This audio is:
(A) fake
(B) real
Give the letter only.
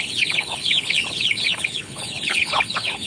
A